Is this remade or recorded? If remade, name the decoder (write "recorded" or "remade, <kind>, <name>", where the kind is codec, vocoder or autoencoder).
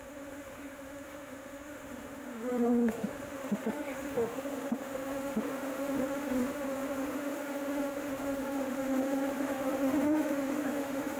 remade, autoencoder, DAC-VAE